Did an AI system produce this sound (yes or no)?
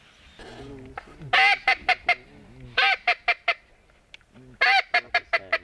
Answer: no